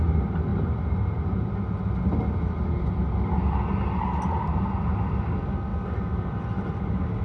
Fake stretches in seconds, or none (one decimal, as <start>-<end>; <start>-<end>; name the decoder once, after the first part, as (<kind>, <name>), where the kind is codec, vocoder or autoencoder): none